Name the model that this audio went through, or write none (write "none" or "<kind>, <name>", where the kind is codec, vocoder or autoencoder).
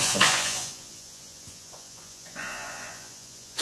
vocoder, Vocos